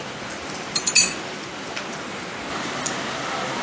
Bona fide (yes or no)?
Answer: yes